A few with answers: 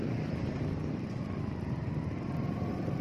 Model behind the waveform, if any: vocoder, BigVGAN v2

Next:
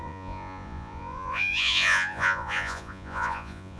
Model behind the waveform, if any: vocoder, Vocos